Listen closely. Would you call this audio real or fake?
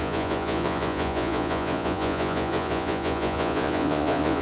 fake